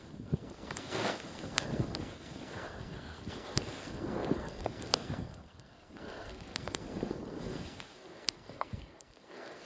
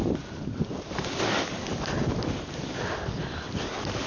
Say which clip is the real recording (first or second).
second